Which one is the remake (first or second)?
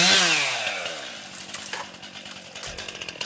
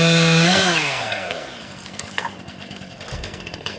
second